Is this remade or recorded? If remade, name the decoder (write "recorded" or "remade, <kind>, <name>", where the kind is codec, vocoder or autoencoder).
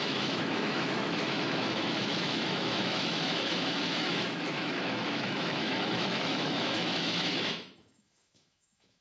remade, autoencoder, DAC-VAE